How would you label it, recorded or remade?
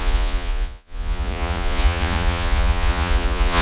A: remade